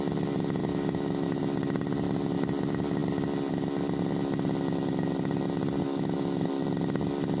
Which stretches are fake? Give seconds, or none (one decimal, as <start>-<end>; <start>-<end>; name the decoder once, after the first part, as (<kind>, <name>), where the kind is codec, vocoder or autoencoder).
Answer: 0.6-1.4 (autoencoder, DAC-VAE); 5.8-6.5